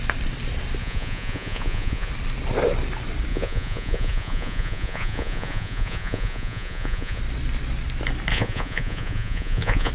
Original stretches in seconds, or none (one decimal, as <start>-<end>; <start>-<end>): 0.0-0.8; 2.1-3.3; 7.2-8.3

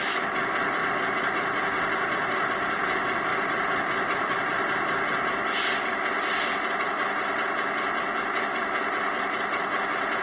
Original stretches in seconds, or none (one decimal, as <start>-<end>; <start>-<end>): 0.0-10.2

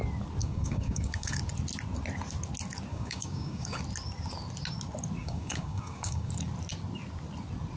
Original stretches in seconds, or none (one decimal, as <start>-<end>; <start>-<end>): 0.0-0.4; 1.4-2.9; 3.8-5.2; 6.3-7.8

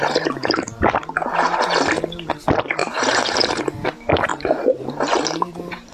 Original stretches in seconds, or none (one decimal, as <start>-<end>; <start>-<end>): 0.0-4.3; 4.8-5.9

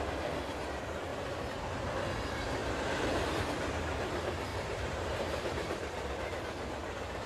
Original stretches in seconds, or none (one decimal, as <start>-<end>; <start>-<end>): 0.0-2.6; 3.2-4.5; 6.1-7.3